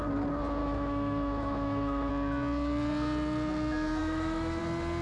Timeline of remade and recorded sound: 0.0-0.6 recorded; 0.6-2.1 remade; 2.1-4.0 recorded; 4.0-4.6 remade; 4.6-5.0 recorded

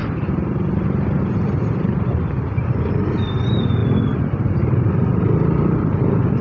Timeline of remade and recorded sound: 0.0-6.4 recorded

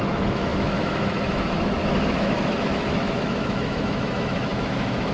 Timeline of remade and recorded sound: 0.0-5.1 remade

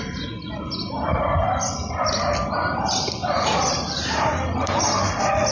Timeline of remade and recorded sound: 0.0-3.2 recorded; 3.2-4.8 remade; 4.8-5.5 recorded

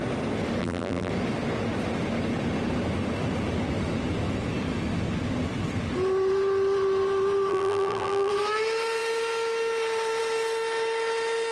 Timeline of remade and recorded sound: 0.0-0.6 recorded; 0.6-1.1 remade; 1.1-7.5 recorded; 7.5-8.3 remade; 8.3-11.5 recorded

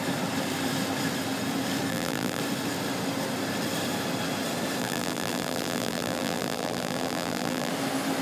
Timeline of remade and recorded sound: 0.0-1.9 recorded; 1.9-2.4 remade; 2.4-4.8 recorded; 4.8-7.7 remade; 7.7-8.2 recorded